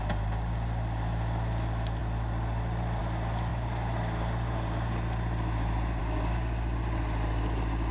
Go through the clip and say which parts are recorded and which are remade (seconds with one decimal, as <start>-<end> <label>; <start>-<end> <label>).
0.0-7.9 recorded